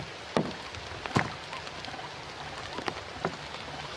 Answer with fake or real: real